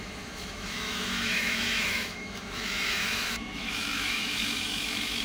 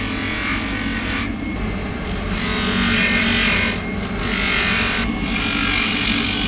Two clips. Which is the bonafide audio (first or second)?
second